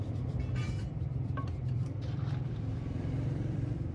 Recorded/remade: remade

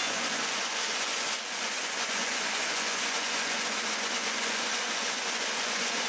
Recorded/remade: remade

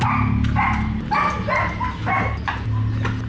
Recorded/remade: recorded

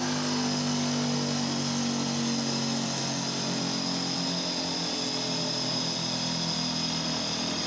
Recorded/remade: recorded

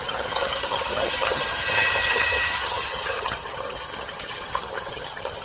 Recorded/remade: remade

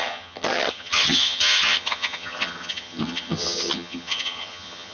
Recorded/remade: remade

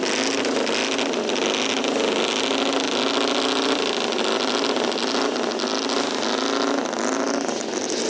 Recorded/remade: recorded